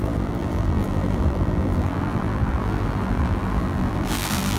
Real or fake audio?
fake